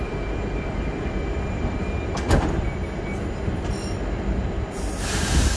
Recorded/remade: recorded